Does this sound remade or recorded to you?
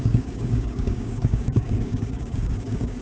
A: remade